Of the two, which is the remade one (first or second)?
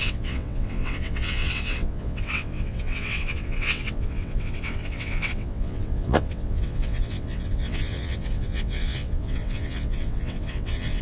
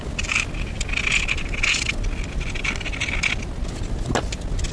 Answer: first